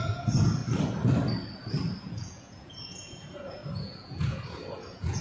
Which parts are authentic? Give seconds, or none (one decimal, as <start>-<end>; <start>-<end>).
0.6-2.0